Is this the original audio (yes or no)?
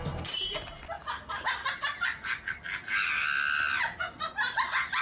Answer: yes